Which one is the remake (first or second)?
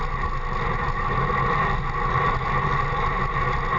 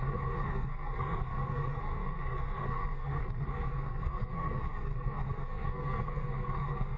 second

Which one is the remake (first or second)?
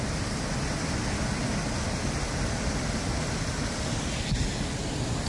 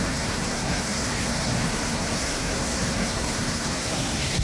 second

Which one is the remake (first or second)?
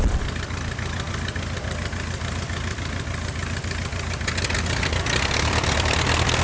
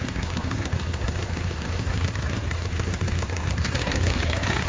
second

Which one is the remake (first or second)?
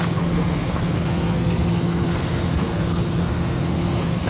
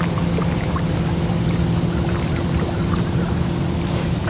first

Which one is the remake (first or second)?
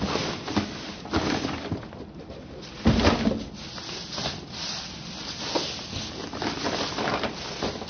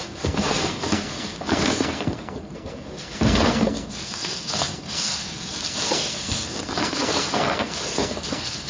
second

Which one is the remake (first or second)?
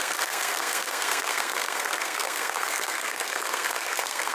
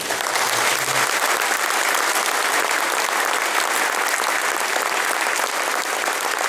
first